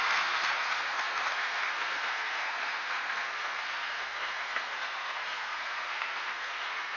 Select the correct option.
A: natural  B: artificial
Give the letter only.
B